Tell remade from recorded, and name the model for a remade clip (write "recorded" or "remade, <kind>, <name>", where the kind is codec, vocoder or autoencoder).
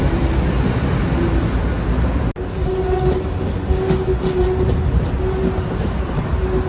recorded